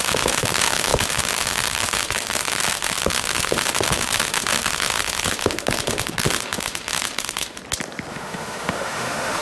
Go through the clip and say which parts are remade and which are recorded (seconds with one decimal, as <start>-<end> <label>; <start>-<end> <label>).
0.0-7.6 remade; 7.6-8.1 recorded; 8.1-9.4 remade